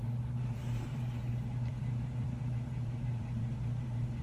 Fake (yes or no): yes